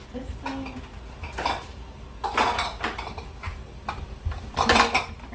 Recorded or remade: recorded